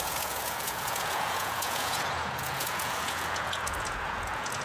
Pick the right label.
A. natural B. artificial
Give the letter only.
B